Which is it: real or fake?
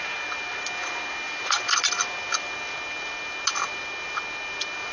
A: real